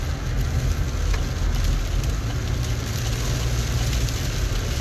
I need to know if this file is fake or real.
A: real